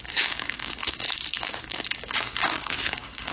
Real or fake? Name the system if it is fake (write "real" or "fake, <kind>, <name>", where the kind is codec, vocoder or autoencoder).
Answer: fake, codec, DAC